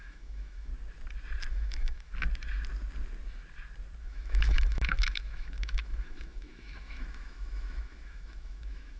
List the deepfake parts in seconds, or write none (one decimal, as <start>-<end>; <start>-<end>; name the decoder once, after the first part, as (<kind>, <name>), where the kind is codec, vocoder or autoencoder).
0.0-0.7 (autoencoder, DAC-VAE); 1.5-2.1; 4.0-9.0